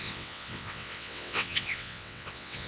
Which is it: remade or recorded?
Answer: remade